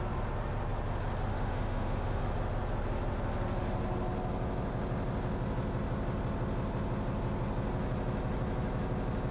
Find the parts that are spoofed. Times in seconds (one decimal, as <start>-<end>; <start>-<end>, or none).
1.3-2.2